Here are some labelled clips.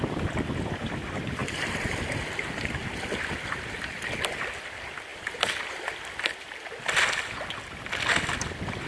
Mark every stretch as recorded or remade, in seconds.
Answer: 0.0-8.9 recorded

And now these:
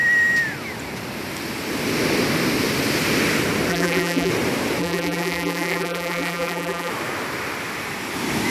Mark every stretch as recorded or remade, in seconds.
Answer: 0.0-3.7 recorded; 3.7-4.3 remade; 4.3-4.8 recorded; 4.8-6.9 remade; 6.9-8.5 recorded